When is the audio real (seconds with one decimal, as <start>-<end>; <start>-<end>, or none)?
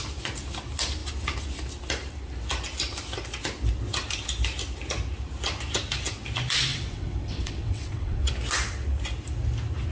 0.0-6.7; 8.3-9.9